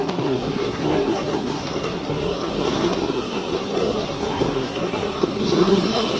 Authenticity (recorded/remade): remade